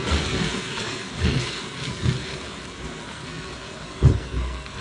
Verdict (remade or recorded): remade